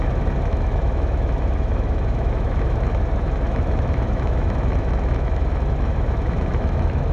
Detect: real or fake fake